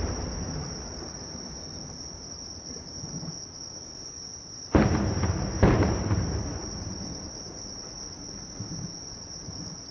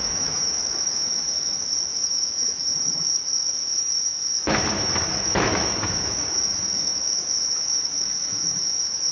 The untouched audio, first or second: first